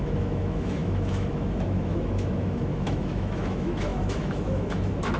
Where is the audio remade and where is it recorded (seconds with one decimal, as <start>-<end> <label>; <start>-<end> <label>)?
0.0-5.2 remade